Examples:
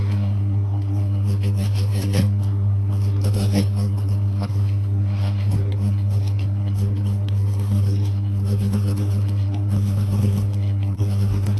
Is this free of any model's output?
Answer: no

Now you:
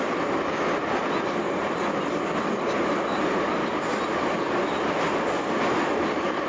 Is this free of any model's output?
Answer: yes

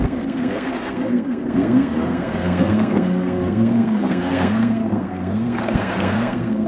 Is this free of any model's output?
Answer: no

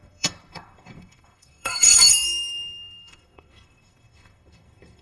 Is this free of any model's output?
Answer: no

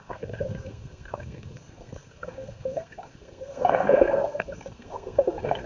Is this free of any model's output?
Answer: no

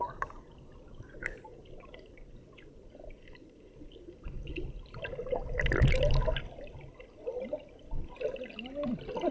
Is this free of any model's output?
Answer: yes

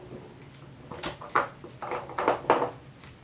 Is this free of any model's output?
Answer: yes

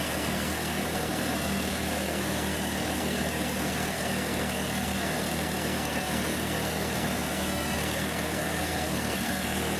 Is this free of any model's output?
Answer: no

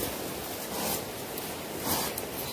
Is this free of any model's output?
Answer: yes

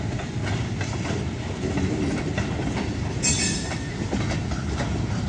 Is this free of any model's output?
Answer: yes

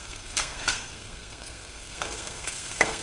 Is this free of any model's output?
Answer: no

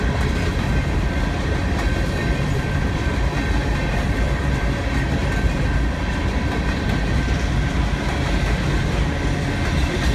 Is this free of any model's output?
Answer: yes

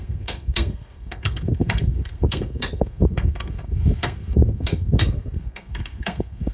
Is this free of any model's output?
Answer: no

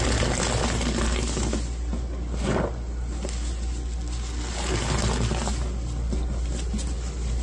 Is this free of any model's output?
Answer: yes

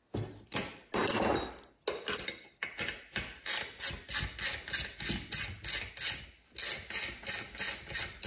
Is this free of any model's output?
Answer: yes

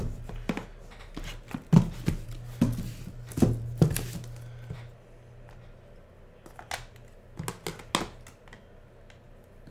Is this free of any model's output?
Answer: yes